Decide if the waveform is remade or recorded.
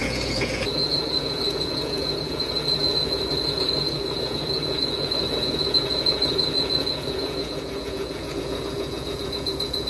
remade